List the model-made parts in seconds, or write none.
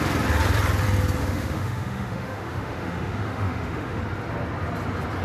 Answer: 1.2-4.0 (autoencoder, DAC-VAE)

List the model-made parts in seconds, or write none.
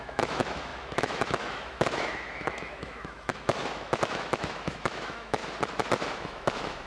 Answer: 0.0-5.4 (autoencoder, DAC-VAE); 6.1-6.9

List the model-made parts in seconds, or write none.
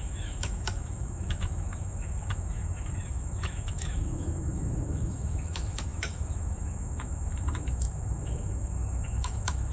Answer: 0.0-9.7 (autoencoder, DAC-VAE)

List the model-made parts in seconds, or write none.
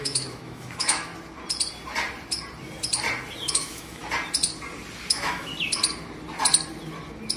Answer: 0.0-1.1 (autoencoder, DAC-VAE); 3.5-4.0; 5.1-5.5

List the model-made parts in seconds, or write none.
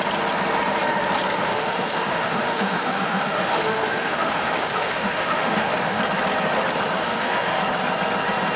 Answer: 1.3-6.0 (autoencoder, DAC-VAE); 7.0-7.6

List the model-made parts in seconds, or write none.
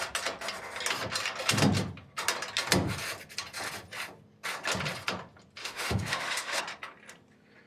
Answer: 5.6-6.6 (autoencoder, DAC-VAE)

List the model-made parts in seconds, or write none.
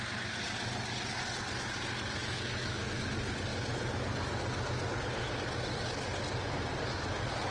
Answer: 2.2-3.1 (autoencoder, DAC-VAE)